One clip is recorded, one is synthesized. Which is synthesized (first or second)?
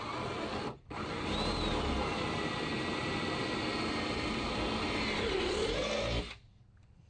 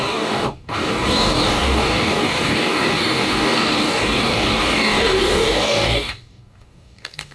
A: second